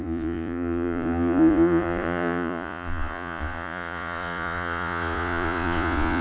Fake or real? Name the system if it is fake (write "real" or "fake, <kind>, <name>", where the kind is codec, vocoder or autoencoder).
fake, vocoder, Vocos